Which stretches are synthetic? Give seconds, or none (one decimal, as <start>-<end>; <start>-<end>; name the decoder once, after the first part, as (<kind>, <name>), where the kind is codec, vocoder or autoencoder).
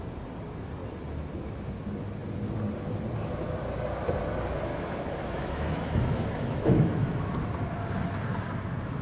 4.7-7.3 (autoencoder, DAC-VAE)